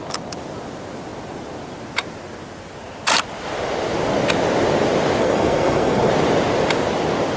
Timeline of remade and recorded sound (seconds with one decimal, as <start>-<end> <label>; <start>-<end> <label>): 0.0-5.2 recorded; 5.2-6.1 remade; 6.1-7.4 recorded